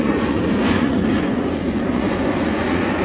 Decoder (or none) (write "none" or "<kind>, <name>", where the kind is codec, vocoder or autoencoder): vocoder, Vocos